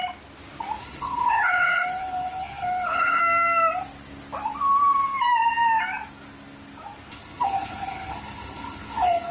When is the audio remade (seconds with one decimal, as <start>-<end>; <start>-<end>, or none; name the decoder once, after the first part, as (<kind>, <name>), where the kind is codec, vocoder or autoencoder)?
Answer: 0.8-3.2 (codec, HILCodec); 7.1-9.3